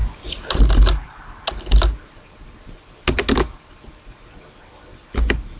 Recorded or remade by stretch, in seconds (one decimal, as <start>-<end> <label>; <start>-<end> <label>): 0.0-5.6 recorded